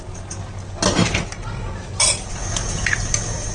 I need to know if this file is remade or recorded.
recorded